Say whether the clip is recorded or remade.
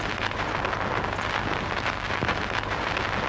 recorded